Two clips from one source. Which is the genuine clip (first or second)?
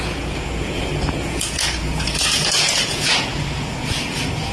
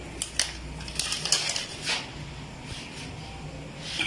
second